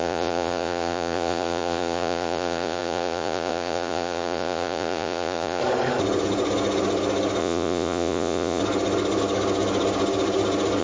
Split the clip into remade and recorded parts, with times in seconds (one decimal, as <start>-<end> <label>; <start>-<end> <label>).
0.0-5.6 remade; 5.6-7.4 recorded; 7.4-8.6 remade; 8.6-10.8 recorded